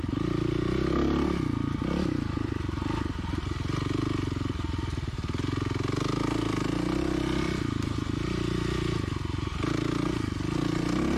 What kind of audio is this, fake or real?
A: real